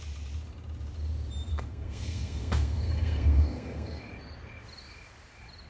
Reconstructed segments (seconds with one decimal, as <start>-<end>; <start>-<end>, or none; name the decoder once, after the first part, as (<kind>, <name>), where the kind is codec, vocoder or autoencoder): 1.5-4.0 (codec, SNAC)